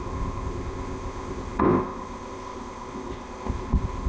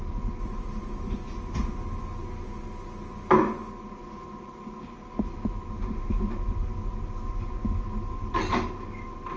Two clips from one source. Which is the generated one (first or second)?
first